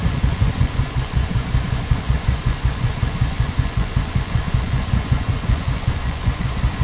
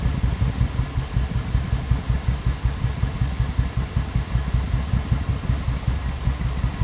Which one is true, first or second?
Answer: second